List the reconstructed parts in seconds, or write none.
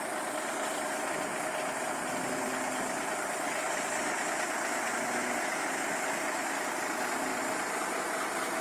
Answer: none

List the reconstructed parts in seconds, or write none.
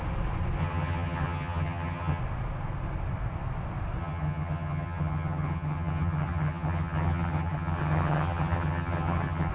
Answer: 0.6-2.2 (vocoder, HiFi-GAN); 4.0-9.5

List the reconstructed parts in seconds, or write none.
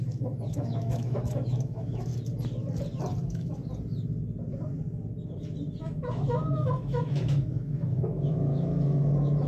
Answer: 0.0-2.1 (autoencoder, DAC-VAE); 3.2-3.6; 5.8-9.5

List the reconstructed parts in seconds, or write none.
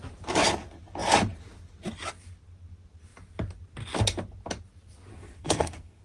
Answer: 5.1-6.0 (codec, SNAC)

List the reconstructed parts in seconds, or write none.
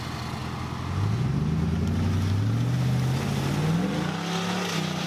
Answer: none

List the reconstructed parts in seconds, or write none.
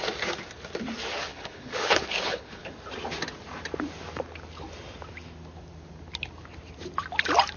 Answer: 1.3-2.7 (codec, HILCodec)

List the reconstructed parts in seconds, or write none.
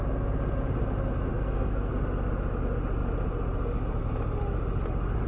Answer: 1.3-1.9 (codec, SNAC)